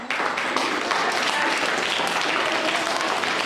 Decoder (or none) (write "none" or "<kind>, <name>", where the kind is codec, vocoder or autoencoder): none